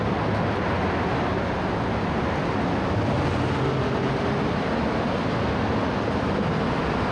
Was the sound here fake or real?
real